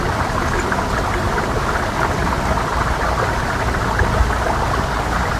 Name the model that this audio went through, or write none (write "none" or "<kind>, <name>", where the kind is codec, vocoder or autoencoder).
none